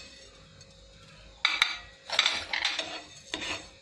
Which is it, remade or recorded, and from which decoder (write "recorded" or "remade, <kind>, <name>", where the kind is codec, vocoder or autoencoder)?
recorded